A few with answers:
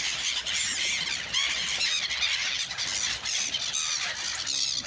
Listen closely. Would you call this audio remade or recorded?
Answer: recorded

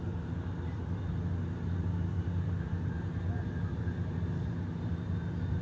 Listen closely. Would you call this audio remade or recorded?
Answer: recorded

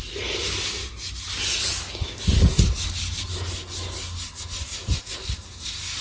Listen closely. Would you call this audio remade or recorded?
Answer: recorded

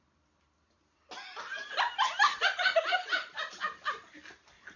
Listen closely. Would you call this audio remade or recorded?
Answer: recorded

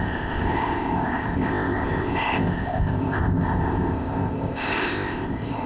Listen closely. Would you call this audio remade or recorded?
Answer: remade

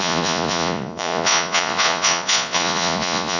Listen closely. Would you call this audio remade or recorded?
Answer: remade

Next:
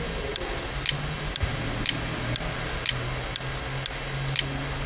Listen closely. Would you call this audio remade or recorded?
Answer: recorded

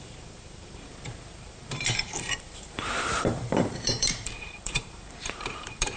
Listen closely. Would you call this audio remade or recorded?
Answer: remade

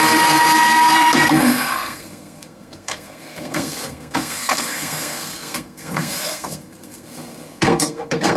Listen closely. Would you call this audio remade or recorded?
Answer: remade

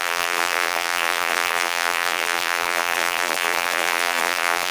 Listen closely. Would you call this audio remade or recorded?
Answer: remade